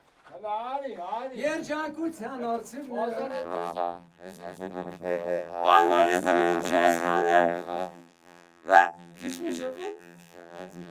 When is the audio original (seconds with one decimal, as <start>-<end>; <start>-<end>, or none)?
0.0-3.3